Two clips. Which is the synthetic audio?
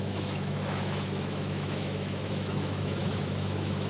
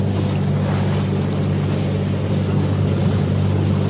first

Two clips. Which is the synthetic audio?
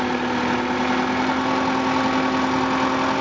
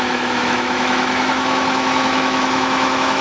second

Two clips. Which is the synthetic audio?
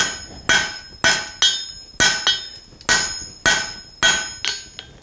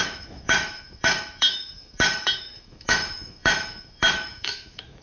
second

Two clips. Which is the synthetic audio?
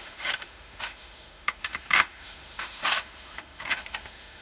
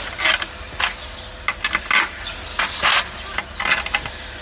first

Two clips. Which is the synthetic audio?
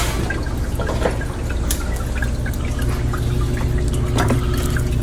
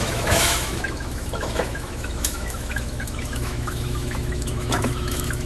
second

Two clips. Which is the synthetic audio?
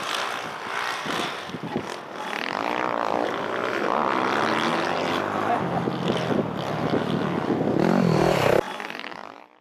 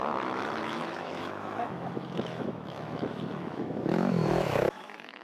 second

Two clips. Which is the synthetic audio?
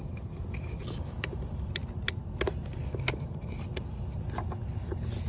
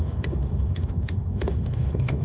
second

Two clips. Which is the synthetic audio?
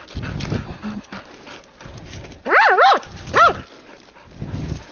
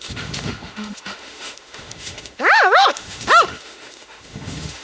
second